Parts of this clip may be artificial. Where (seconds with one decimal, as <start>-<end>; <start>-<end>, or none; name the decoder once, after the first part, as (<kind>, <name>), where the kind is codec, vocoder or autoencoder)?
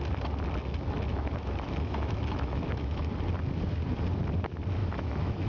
1.1-3.1 (autoencoder, DAC-VAE); 4.8-5.5